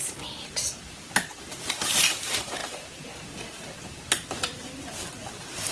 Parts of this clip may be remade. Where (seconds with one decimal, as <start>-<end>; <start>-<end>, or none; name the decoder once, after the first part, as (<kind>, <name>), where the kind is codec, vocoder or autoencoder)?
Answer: none